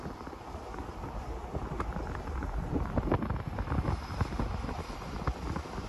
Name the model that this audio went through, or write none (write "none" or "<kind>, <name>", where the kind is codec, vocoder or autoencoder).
none